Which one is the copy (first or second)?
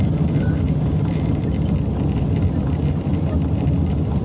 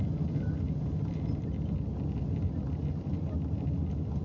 first